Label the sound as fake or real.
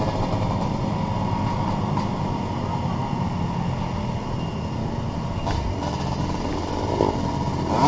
real